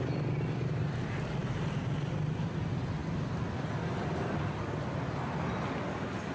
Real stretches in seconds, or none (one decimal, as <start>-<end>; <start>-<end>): 0.0-6.3